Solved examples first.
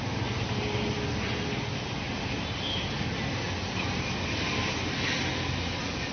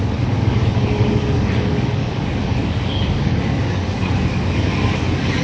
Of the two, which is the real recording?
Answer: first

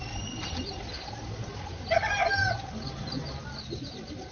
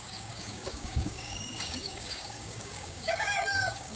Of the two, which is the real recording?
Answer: first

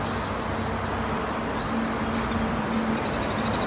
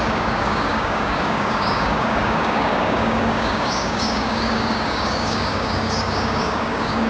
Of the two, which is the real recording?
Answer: first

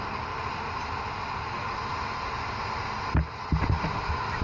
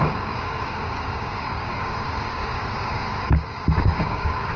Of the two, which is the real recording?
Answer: first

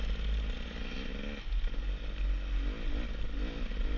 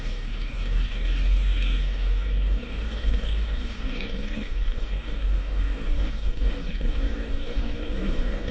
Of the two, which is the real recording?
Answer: first